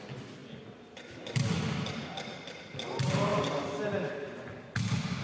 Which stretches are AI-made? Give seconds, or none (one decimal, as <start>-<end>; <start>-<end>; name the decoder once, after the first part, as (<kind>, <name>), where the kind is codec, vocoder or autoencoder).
none